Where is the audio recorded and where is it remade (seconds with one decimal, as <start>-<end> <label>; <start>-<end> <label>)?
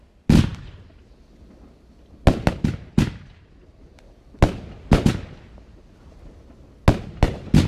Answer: 0.0-7.7 recorded